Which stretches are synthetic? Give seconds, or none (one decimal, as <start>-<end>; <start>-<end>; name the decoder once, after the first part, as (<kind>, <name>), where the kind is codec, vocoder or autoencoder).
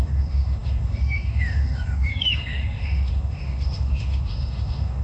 0.0-5.0 (autoencoder, DAC-VAE)